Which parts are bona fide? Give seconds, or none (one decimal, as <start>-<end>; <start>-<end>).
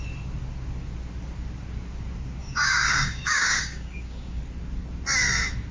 0.0-2.4; 4.4-5.7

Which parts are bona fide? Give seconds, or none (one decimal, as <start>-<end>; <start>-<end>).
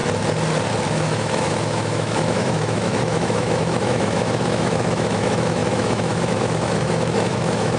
0.0-0.9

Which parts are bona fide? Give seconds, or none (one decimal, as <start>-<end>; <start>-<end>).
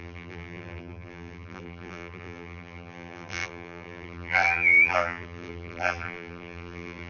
none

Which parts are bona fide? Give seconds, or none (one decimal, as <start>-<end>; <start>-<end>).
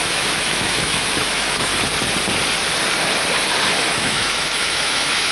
1.7-3.9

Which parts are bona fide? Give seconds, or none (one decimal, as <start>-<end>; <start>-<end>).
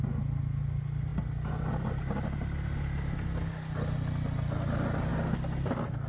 0.0-6.1